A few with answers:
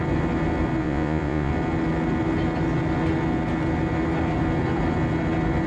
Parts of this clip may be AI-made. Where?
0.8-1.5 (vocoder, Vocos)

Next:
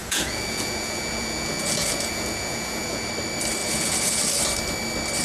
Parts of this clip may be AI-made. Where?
0.0-3.1 (vocoder, Vocos); 3.6-4.2

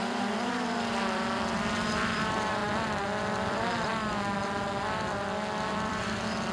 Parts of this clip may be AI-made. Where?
0.0-2.6 (vocoder, BigVGAN v2); 3.2-3.9; 5.7-6.5

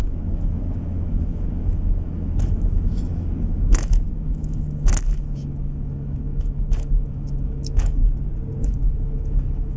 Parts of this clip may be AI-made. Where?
0.0-8.0 (autoencoder, DAC-VAE); 8.6-9.8